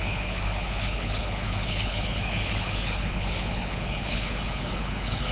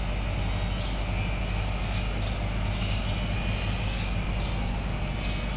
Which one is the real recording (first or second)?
second